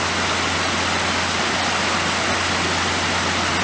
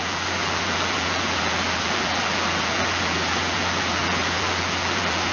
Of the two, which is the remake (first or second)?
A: second